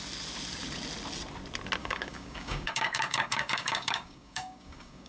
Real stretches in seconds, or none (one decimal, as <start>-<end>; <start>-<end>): 0.0-1.8